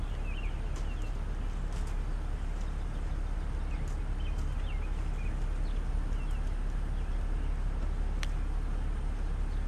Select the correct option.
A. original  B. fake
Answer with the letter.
A